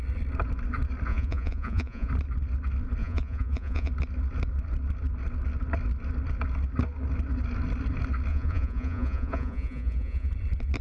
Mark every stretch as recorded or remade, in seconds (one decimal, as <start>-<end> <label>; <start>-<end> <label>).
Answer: 0.0-1.1 recorded; 1.1-2.1 remade; 2.1-3.0 recorded; 3.0-3.9 remade; 3.9-8.3 recorded; 8.3-10.3 remade; 10.3-10.8 recorded

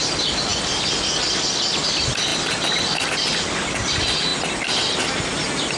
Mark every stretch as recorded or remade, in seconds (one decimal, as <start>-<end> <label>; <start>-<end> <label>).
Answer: 0.0-2.3 recorded; 2.3-3.0 remade; 3.0-4.3 recorded; 4.3-4.8 remade; 4.8-5.8 recorded

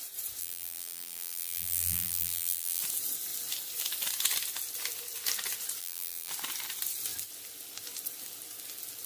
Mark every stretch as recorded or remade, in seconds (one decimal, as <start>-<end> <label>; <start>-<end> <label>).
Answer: 0.0-0.4 recorded; 0.4-2.8 remade; 2.8-5.8 recorded; 5.8-6.3 remade; 6.3-9.1 recorded

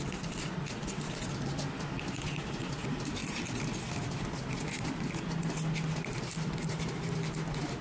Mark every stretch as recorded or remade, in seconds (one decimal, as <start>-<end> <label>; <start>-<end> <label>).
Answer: 0.0-7.8 recorded

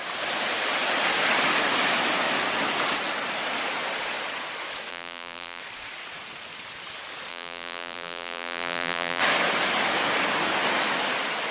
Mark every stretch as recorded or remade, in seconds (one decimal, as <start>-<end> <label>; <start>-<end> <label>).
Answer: 0.0-4.9 recorded; 4.9-5.6 remade; 5.6-7.3 recorded; 7.3-9.2 remade; 9.2-11.5 recorded

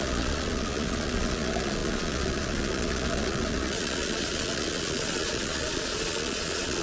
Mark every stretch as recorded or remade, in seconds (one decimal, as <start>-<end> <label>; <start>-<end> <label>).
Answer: 0.0-6.8 remade

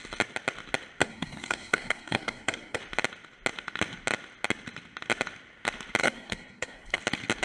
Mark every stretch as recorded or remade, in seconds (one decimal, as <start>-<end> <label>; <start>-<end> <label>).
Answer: 0.0-1.0 recorded; 1.0-2.8 remade; 2.8-6.0 recorded; 6.0-7.0 remade; 7.0-7.4 recorded